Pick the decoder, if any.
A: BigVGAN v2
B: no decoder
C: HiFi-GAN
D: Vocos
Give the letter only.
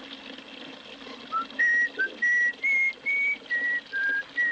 B